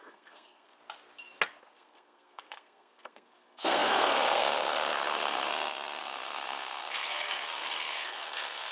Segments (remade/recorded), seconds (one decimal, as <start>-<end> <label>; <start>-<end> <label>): 0.0-0.8 remade; 0.8-1.6 recorded; 1.6-5.5 remade; 5.5-6.0 recorded; 6.0-8.7 remade

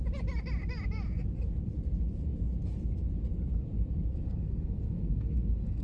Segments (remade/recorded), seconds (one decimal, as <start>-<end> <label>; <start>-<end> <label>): 0.0-4.1 recorded; 4.1-5.8 remade